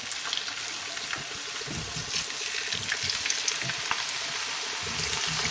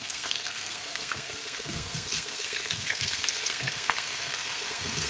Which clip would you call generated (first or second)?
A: second